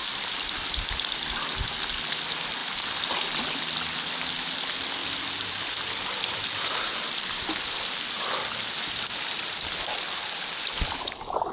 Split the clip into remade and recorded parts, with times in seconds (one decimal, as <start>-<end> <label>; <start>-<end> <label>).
0.0-1.2 remade; 1.2-5.0 recorded; 5.0-10.0 remade; 10.0-11.5 recorded